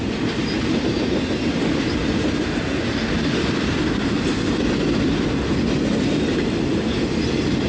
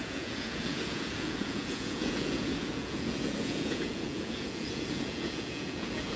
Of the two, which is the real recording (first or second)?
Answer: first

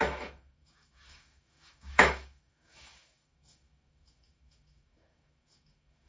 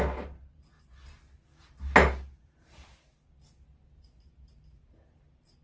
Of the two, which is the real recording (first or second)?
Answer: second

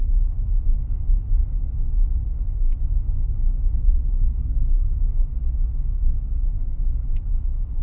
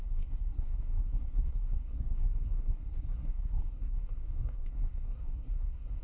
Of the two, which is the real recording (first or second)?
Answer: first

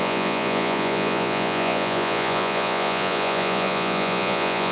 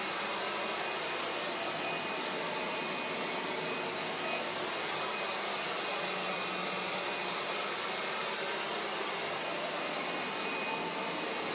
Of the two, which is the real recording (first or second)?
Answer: second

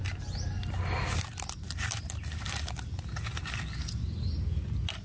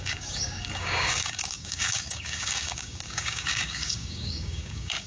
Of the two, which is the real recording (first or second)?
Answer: first